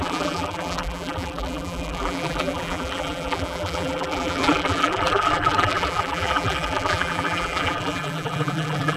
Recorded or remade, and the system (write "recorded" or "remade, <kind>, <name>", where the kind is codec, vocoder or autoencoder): remade, vocoder, BigVGAN v2